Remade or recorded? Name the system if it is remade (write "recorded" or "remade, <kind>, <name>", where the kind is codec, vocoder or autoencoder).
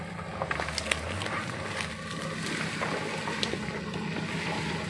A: recorded